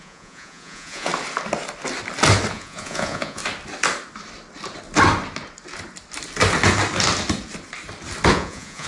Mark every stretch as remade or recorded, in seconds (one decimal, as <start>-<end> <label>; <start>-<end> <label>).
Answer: 0.0-1.1 remade; 1.1-2.5 recorded; 2.5-3.4 remade; 3.4-8.3 recorded; 8.3-8.9 remade